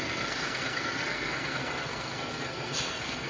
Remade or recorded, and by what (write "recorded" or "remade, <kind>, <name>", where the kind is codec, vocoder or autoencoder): remade, codec, SNAC